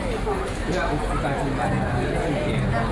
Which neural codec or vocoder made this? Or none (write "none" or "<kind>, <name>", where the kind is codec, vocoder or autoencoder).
none